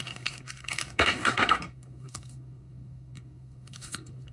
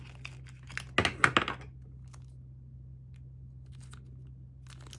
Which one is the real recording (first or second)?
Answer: second